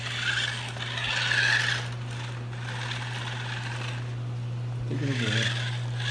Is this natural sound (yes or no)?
yes